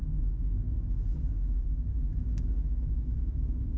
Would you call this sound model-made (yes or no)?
yes